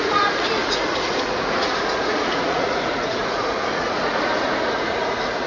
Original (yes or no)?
no